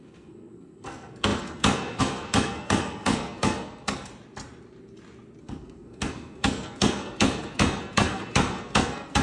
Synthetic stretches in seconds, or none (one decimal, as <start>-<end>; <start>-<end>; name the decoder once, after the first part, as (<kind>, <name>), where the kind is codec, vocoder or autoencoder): 0.0-4.1 (codec, SNAC); 5.4-9.2